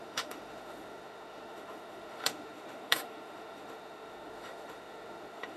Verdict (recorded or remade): remade